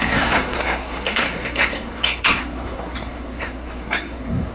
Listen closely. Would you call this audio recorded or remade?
remade